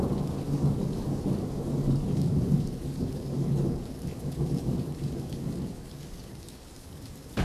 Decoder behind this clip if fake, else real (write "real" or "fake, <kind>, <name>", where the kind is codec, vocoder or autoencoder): fake, codec, DAC